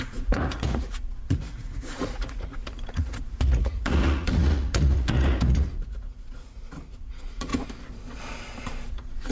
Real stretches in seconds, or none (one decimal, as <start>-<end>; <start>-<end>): 7.5-8.9